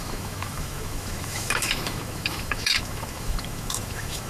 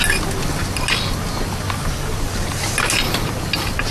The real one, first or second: second